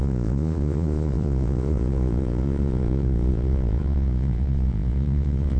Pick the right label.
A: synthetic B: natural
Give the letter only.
A